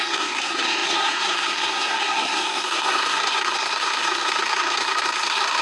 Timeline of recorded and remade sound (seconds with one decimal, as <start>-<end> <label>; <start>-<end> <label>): 0.0-5.6 remade